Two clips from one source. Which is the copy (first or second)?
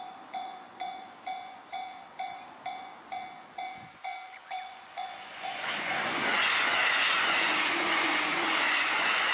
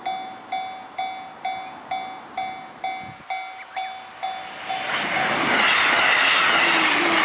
first